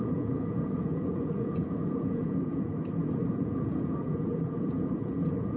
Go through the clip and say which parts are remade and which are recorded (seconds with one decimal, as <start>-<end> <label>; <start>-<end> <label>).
0.0-2.7 remade; 2.7-3.3 recorded; 3.3-5.6 remade